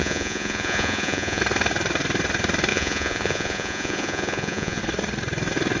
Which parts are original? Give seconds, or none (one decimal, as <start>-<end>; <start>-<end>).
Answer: 1.4-2.7; 4.8-5.8